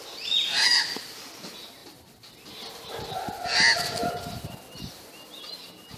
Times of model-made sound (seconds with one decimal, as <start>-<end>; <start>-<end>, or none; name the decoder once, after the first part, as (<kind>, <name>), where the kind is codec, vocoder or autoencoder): none